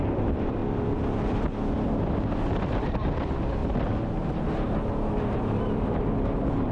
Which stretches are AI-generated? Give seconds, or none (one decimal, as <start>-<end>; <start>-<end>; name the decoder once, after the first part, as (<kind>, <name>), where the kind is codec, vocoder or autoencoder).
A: 0.0-0.6 (vocoder, BigVGAN v2); 2.6-3.6